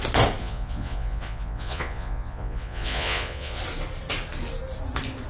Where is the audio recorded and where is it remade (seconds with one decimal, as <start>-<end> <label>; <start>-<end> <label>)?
0.0-0.4 recorded; 0.4-3.6 remade; 3.6-5.3 recorded